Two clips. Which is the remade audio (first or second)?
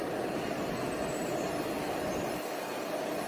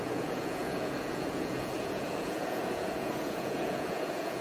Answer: second